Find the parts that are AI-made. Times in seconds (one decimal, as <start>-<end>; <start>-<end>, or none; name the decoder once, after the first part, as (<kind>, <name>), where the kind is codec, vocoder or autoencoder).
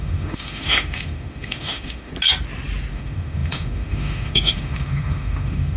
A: 0.0-2.1 (autoencoder, DAC-VAE); 2.9-5.8